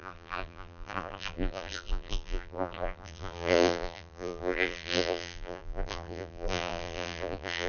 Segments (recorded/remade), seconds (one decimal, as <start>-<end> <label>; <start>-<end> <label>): 0.0-7.7 remade